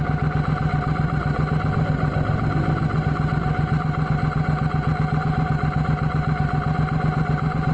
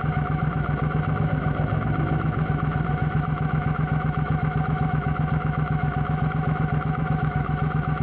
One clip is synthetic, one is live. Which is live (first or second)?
first